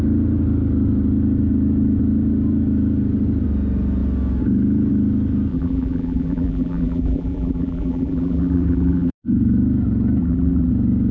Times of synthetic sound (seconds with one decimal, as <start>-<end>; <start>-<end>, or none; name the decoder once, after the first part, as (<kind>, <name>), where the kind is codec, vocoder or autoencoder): 5.5-9.1 (vocoder, BigVGAN v2); 10.2-10.7